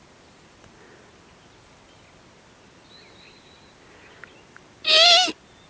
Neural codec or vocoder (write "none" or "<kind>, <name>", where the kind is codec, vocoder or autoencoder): none